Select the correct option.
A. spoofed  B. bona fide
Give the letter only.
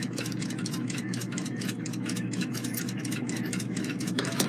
A